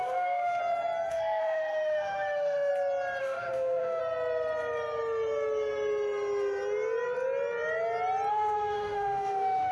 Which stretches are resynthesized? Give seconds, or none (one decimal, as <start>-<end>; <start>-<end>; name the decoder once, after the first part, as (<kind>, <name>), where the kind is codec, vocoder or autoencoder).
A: 0.0-0.6 (autoencoder, DAC-VAE); 1.1-2.7; 3.2-4.0; 8.3-9.7